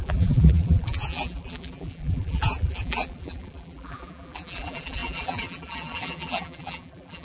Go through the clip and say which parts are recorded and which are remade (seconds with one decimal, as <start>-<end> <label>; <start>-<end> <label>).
0.0-7.2 remade